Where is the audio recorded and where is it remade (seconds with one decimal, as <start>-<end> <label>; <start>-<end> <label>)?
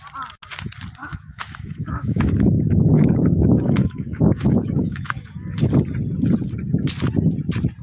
0.0-1.0 recorded; 1.0-5.7 remade; 5.7-7.8 recorded